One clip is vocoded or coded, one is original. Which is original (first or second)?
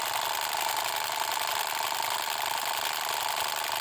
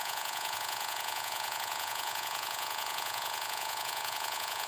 first